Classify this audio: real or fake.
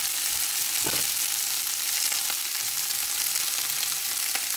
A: real